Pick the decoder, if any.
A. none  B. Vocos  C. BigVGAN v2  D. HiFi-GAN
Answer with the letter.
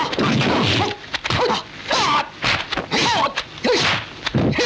A